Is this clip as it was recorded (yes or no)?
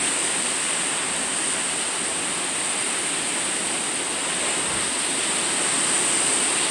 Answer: yes